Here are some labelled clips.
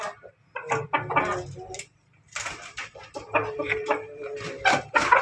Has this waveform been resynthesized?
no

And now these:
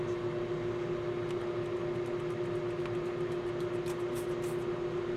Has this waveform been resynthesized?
no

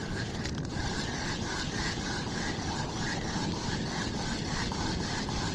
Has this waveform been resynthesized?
no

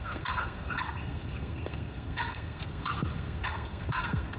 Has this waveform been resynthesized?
yes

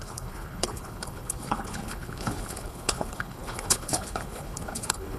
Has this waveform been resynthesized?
yes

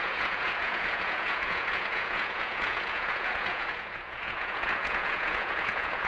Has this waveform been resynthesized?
yes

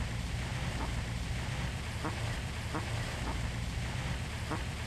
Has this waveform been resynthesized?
no